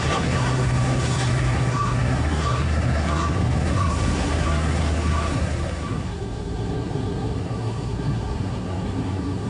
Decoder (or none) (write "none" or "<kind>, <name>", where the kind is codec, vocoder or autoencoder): codec, SNAC